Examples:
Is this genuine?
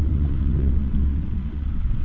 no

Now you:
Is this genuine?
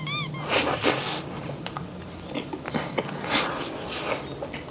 yes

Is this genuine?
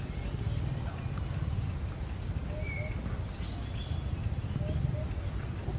yes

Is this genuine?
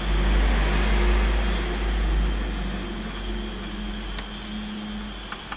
yes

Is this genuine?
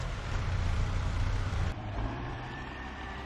no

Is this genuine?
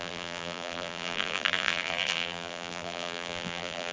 no